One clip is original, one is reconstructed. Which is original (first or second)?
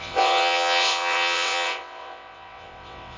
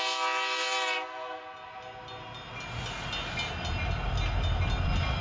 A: second